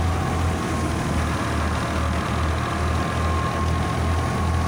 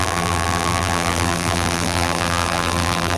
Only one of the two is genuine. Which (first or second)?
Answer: first